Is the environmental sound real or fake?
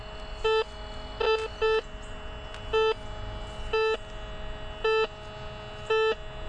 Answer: real